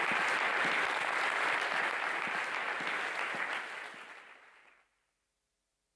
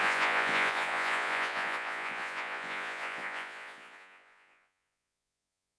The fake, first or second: second